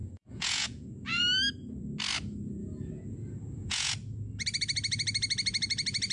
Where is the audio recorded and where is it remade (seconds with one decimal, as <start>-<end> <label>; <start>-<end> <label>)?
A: 0.0-1.2 remade; 1.2-2.6 recorded; 2.6-3.9 remade; 3.9-6.1 recorded